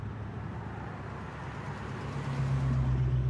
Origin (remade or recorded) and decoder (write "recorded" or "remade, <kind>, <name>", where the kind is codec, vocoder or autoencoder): recorded